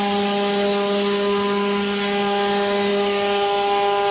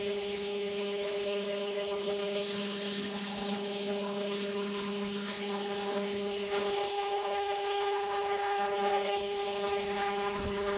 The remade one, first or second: second